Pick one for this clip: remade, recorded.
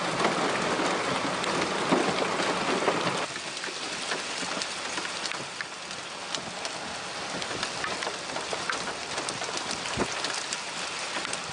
recorded